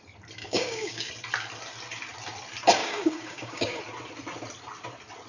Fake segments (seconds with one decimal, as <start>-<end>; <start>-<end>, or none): 0.4-1.1; 2.8-3.8